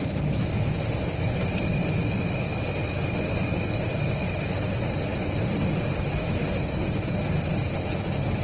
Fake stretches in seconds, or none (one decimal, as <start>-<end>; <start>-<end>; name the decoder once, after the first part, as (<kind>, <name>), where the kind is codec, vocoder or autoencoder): none